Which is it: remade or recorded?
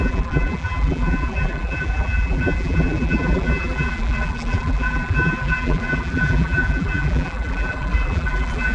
remade